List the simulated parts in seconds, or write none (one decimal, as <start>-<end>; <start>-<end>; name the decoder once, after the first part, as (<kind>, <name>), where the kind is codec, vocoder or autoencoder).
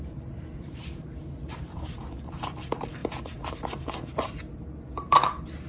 0.0-5.7 (vocoder, BigVGAN v2)